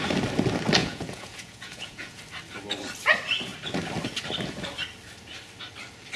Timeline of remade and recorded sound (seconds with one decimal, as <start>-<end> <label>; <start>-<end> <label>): 0.0-0.8 recorded; 0.8-2.2 remade; 2.2-6.2 recorded